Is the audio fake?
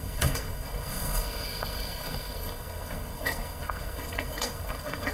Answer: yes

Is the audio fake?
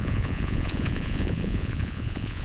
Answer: yes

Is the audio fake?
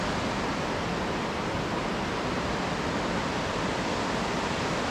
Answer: no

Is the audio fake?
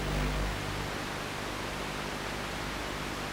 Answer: no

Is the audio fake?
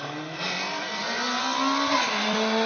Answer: no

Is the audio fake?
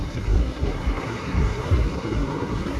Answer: yes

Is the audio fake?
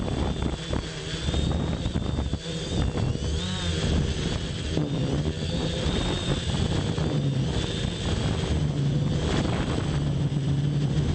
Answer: no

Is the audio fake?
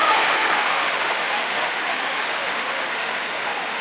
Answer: yes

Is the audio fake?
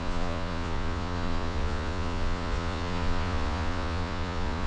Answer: yes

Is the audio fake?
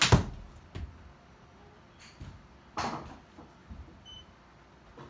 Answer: no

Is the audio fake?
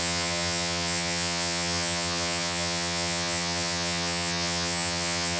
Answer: yes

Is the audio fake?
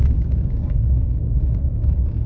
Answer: yes